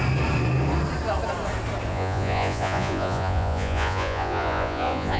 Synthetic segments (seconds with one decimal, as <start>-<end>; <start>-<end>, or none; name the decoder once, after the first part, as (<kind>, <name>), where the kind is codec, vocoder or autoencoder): 1.9-5.2 (vocoder, Vocos)